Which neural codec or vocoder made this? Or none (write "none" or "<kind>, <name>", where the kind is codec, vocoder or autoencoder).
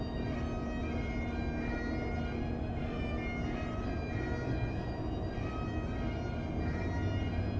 none